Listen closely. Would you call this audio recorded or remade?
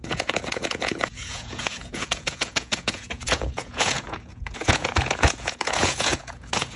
remade